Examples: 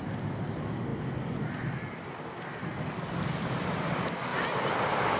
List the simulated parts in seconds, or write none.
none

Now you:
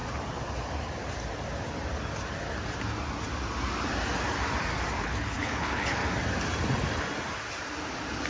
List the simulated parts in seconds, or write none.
5.0-6.0 (codec, HILCodec)

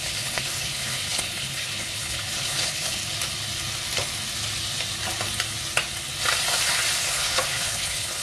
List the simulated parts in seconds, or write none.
0.0-3.0 (codec, HILCodec); 7.1-8.2

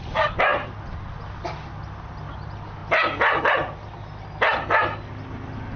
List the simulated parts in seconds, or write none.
none

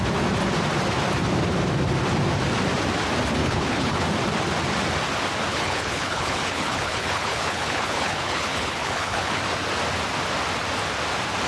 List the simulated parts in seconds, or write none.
3.4-4.0 (codec, HILCodec); 5.5-9.4

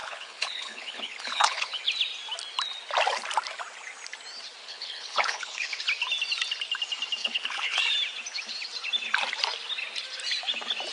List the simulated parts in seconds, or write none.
0.0-1.8 (codec, HILCodec); 4.6-5.8; 7.2-7.8

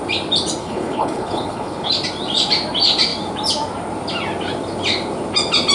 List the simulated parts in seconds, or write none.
0.6-1.9 (codec, HILCodec)